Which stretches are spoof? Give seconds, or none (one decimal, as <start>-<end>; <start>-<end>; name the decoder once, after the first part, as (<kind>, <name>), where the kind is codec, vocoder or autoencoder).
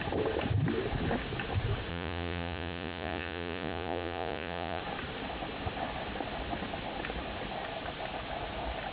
1.9-4.8 (vocoder, Vocos)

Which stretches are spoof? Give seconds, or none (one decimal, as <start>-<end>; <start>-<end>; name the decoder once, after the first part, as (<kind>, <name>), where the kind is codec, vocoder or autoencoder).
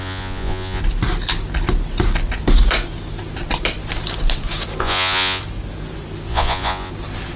0.0-0.8 (vocoder, Vocos); 4.8-5.4; 6.3-6.9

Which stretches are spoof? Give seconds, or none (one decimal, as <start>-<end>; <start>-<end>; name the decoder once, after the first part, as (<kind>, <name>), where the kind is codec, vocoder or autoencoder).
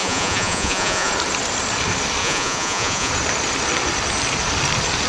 0.0-1.1 (vocoder, Vocos); 2.2-3.1